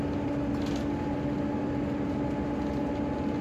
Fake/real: real